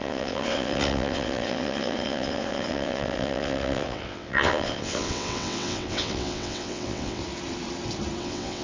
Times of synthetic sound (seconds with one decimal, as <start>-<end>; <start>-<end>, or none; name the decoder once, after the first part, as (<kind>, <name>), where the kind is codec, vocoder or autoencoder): 0.0-7.2 (vocoder, WaveNeXt); 8.2-8.6